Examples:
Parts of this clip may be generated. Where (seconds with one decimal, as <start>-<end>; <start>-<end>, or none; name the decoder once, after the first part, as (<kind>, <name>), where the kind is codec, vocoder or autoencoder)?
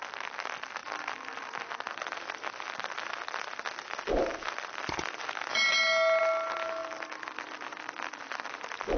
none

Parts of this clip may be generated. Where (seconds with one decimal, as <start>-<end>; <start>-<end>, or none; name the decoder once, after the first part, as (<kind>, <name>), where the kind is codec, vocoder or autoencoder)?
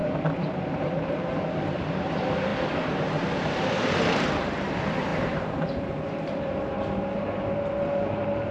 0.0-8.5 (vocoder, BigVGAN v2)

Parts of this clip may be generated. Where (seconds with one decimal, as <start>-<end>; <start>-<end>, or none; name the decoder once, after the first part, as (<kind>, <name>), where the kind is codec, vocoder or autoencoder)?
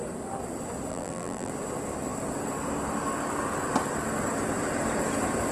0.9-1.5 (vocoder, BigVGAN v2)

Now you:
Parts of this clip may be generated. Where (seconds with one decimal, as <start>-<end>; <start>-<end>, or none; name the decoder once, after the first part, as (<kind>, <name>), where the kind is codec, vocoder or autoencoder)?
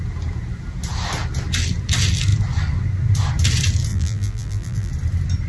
3.9-4.9 (vocoder, BigVGAN v2)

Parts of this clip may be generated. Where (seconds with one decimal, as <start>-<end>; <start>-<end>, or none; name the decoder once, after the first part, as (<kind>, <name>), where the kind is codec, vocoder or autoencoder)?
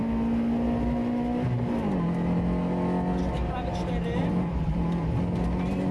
4.2-4.8 (vocoder, BigVGAN v2)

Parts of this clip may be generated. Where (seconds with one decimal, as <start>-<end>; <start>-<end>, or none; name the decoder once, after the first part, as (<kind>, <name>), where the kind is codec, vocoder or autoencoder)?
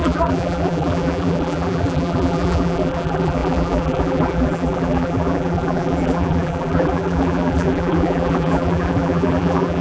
0.0-9.8 (vocoder, BigVGAN v2)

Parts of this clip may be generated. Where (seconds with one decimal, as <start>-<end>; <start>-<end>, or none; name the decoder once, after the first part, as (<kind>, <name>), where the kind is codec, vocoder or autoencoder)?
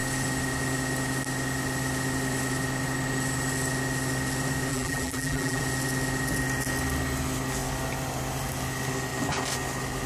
4.7-5.6 (vocoder, BigVGAN v2)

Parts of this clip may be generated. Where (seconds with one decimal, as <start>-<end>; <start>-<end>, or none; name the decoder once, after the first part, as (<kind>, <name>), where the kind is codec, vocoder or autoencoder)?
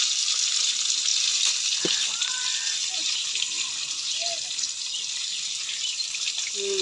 1.1-1.6 (vocoder, BigVGAN v2)